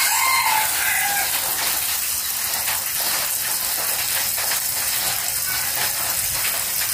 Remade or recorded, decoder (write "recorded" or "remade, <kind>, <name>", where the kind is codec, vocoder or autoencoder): recorded